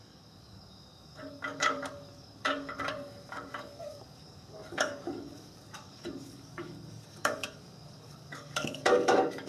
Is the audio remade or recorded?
remade